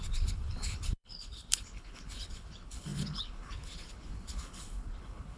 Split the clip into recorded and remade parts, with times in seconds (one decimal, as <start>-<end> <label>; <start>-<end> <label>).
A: 0.0-5.4 remade